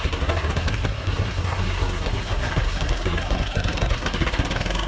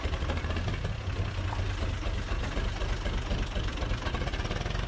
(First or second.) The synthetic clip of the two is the first